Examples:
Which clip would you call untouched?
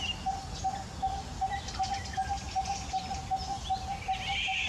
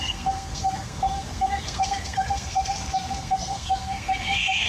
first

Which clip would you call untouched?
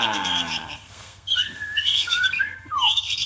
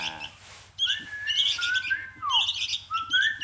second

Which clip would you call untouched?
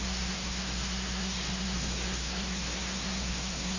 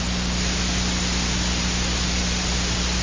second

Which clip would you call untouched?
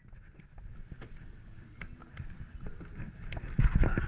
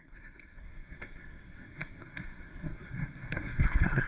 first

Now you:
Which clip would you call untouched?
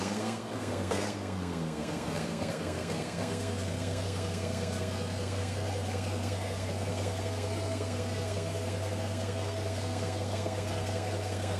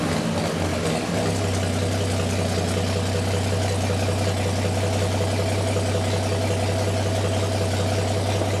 second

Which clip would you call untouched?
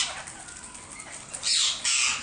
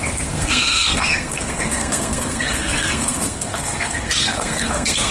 first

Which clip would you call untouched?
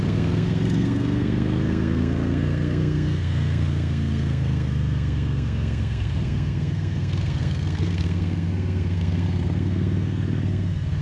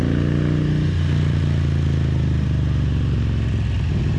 second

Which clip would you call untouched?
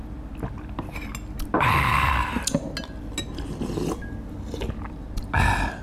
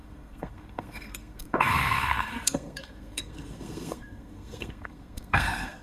first